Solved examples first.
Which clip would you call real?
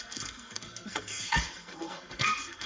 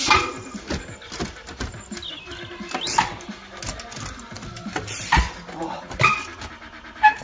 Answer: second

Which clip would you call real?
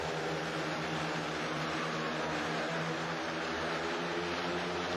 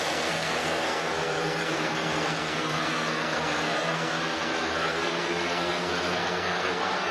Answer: first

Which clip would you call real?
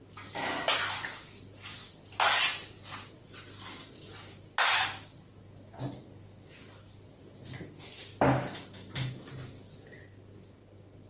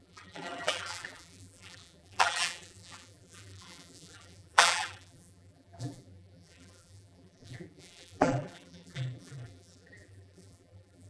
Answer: first